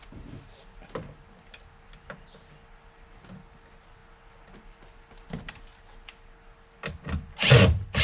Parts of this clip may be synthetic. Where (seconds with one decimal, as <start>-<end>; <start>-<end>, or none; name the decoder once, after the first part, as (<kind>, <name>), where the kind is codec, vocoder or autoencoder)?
none

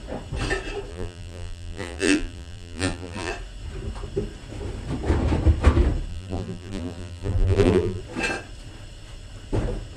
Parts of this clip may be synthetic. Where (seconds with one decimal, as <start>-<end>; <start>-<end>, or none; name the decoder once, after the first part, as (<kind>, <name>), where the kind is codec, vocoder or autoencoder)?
0.9-3.3 (vocoder, BigVGAN v2); 6.1-8.0

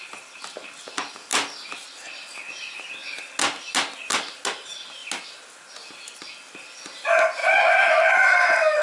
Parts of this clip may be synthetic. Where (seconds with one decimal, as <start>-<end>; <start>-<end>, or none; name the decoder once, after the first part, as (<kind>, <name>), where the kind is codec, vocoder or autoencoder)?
none

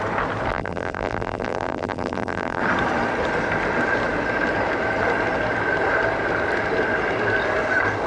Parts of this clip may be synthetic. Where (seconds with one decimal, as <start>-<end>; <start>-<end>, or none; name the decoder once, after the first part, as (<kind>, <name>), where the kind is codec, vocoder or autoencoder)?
0.5-2.6 (vocoder, BigVGAN v2)